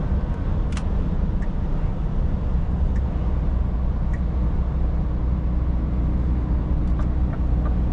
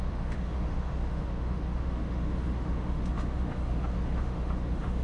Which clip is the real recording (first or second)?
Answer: first